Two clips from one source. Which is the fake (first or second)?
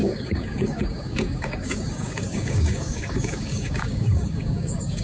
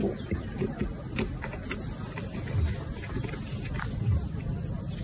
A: first